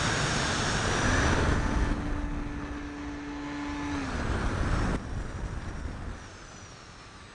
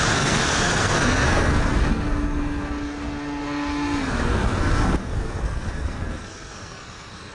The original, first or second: first